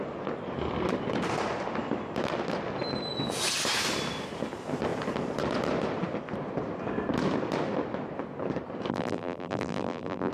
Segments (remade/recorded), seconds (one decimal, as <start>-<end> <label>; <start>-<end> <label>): 0.0-8.9 recorded; 8.9-10.3 remade